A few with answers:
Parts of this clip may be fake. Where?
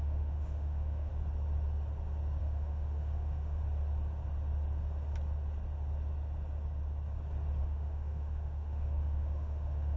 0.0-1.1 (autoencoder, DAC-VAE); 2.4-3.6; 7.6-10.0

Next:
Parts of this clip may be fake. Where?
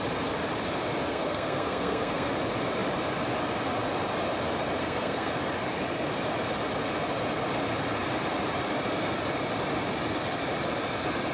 1.1-2.3 (codec, SNAC); 4.8-5.3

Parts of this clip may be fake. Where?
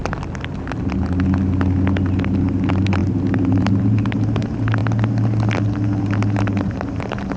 2.4-4.8 (vocoder, BigVGAN v2); 6.0-7.4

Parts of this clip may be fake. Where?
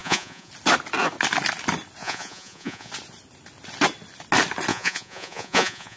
0.0-0.5 (vocoder, Vocos); 2.0-2.9; 4.7-6.0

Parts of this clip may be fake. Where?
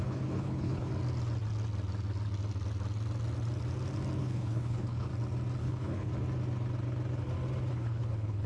0.0-0.9 (codec, HILCodec); 4.2-5.1; 5.6-6.1; 7.7-8.5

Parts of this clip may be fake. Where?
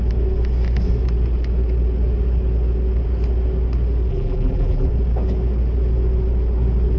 4.1-4.9 (vocoder, BigVGAN v2)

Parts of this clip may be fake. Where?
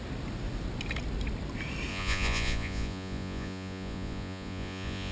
1.9-5.1 (vocoder, Vocos)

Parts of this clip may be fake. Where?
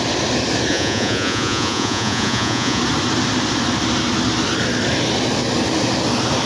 0.7-2.8 (vocoder, Vocos)